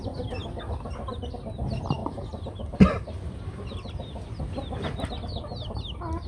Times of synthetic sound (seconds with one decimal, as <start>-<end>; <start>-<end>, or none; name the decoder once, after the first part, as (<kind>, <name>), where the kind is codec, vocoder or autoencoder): 2.0-4.4 (vocoder, BigVGAN v2)

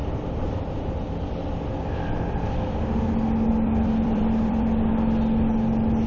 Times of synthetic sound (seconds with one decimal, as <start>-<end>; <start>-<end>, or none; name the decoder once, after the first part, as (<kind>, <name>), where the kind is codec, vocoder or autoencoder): 0.0-1.2 (vocoder, BigVGAN v2); 3.5-4.9